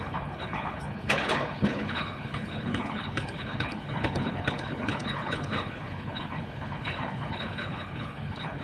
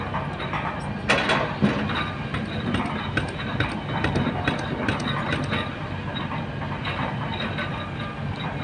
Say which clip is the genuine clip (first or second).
second